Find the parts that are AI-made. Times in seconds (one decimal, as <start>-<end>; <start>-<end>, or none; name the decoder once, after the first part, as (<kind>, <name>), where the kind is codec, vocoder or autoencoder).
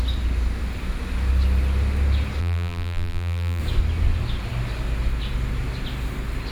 2.4-3.6 (vocoder, BigVGAN v2)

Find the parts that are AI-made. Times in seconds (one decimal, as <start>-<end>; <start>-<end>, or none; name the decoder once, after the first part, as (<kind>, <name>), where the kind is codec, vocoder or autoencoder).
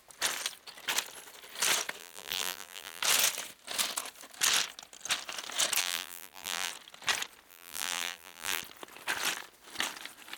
2.0-3.0 (vocoder, BigVGAN v2); 5.8-6.7; 7.5-8.6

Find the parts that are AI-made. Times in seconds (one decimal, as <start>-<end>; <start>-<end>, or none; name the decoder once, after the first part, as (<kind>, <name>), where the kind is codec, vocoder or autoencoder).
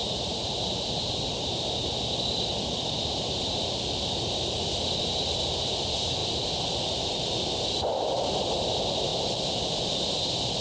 0.0-2.0 (vocoder, BigVGAN v2); 6.2-7.0; 9.1-9.7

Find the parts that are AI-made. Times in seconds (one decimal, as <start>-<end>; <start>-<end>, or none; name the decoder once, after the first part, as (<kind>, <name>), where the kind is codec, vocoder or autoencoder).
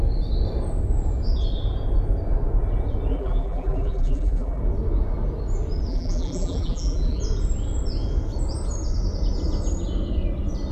3.1-4.6 (vocoder, BigVGAN v2); 5.9-7.2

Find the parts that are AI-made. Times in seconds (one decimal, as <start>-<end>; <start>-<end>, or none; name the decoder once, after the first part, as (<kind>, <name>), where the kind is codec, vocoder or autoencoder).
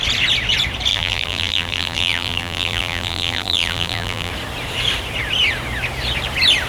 0.9-4.3 (vocoder, BigVGAN v2)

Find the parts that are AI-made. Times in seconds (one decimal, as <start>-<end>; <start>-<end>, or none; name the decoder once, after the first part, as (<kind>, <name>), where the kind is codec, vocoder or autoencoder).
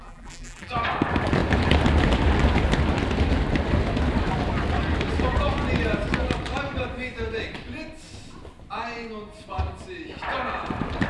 0.0-0.7 (vocoder, BigVGAN v2)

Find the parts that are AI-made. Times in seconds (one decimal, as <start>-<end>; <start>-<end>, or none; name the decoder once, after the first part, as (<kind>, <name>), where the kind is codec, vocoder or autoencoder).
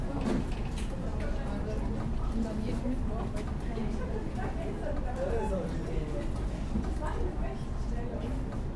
none